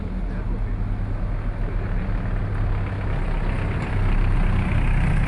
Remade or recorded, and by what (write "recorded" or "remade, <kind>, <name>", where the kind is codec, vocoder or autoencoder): recorded